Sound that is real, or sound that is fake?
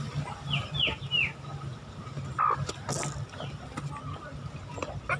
real